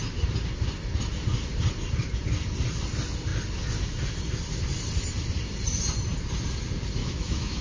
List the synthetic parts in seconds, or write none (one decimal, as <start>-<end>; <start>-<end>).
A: 7.0-7.6